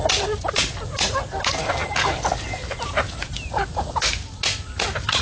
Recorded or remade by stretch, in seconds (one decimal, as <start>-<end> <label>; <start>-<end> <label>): 0.0-5.2 recorded